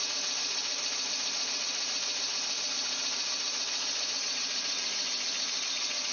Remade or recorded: recorded